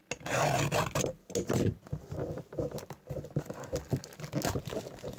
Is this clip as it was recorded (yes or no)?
yes